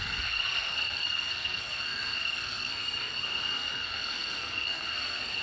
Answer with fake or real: fake